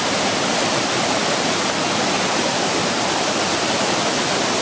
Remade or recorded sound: remade